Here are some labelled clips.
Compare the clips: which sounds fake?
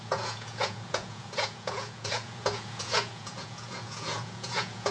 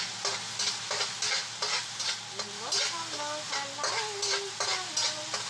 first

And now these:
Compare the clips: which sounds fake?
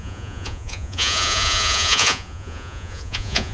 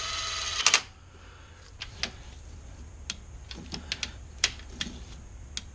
first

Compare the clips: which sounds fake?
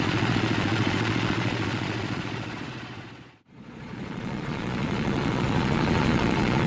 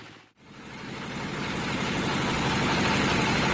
first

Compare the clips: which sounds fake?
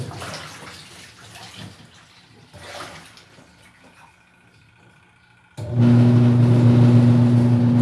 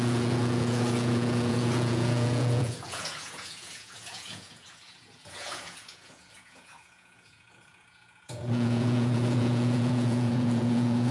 second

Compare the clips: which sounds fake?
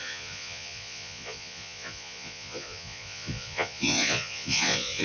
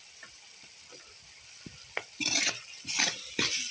first